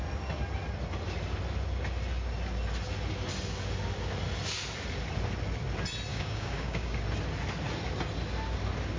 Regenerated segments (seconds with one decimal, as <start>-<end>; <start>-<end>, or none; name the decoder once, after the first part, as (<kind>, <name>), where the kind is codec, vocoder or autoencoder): 6.1-7.0 (codec, DAC)